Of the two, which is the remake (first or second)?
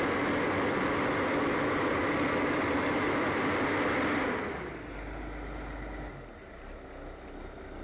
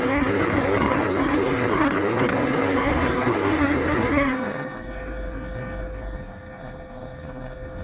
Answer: second